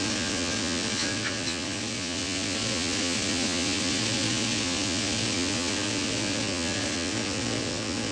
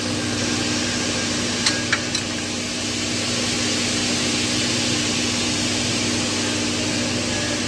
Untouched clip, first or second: second